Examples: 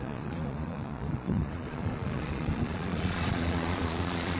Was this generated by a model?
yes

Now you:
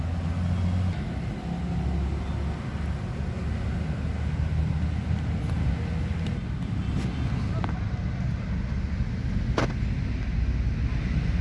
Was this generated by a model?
no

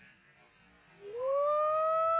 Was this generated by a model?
no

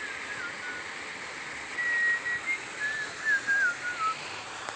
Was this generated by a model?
no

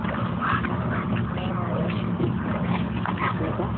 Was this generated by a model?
no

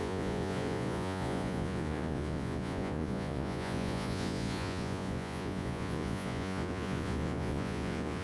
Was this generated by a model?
yes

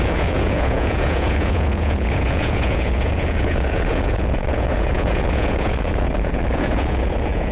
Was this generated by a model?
yes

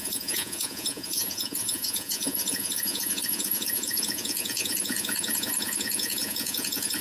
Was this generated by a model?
yes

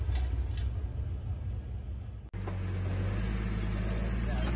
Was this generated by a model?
no